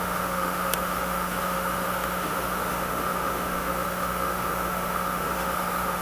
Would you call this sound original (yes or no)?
no